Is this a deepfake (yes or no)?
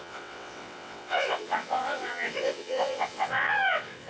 yes